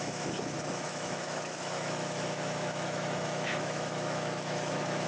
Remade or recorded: remade